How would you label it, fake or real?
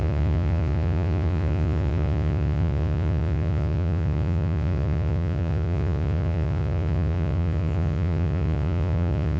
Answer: fake